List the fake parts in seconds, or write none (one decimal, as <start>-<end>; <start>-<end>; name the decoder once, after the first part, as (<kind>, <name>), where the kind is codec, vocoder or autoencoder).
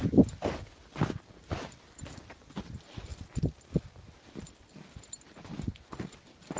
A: none